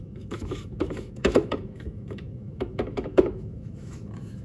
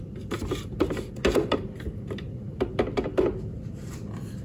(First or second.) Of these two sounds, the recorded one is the second